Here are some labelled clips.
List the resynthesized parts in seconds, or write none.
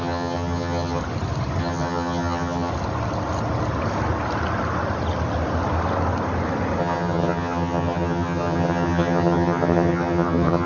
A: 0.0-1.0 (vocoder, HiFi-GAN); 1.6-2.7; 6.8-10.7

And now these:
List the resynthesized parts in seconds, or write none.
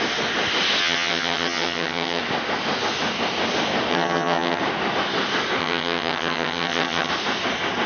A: 0.8-2.2 (vocoder, HiFi-GAN); 3.9-4.6; 5.6-7.1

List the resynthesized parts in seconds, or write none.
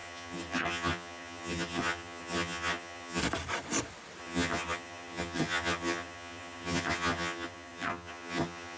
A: 0.0-3.2 (vocoder, HiFi-GAN); 4.2-8.8